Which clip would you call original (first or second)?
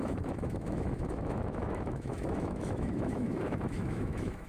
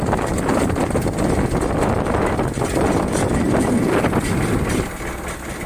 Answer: second